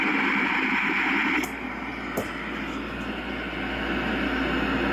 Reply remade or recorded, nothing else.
recorded